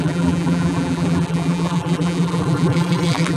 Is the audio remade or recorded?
remade